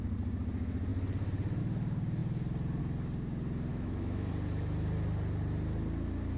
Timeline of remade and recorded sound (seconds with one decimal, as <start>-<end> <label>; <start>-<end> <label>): 0.0-3.7 recorded; 3.7-4.3 remade; 4.3-6.4 recorded